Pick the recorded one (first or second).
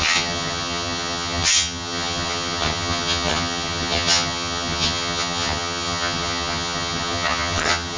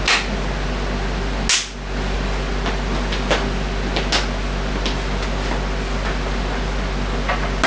second